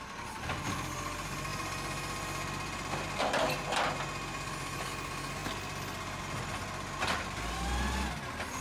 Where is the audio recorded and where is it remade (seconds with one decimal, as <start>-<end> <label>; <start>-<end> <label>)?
0.0-8.6 recorded